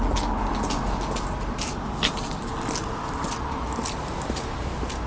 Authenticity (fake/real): real